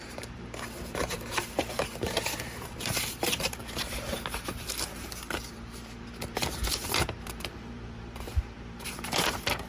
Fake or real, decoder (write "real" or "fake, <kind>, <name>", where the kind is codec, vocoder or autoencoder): fake, vocoder, BigVGAN v2